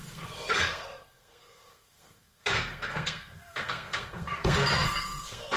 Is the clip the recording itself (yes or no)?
no